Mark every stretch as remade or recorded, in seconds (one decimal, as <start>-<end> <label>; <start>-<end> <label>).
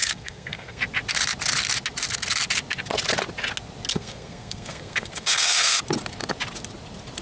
0.0-0.8 remade; 0.8-3.9 recorded; 3.9-5.8 remade; 5.8-7.2 recorded